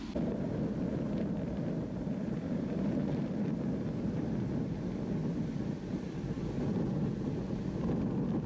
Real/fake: real